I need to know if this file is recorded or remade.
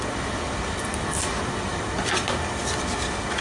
remade